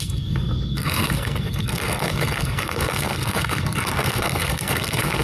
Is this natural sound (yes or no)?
no